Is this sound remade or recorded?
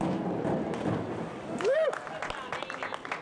recorded